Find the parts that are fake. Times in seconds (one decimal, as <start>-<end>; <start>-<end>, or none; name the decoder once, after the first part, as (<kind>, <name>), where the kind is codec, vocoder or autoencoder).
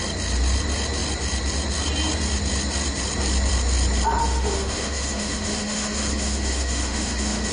4.2-7.5 (autoencoder, DAC-VAE)